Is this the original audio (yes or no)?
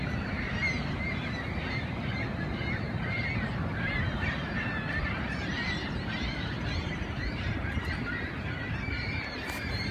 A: no